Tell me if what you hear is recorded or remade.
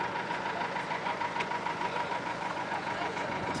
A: remade